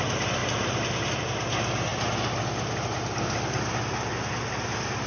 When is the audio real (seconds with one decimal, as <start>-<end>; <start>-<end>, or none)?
0.0-5.1